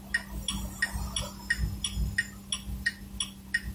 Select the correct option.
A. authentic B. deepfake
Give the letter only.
A